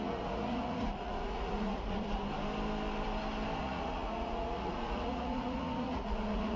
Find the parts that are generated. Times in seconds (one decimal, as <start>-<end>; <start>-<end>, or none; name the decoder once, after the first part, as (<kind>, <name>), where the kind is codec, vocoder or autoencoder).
0.0-2.2 (vocoder, Vocos); 3.6-6.6